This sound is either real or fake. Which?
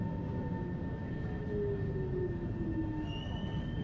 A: real